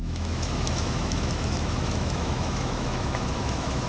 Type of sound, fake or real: fake